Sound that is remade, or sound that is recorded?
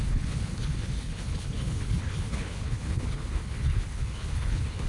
remade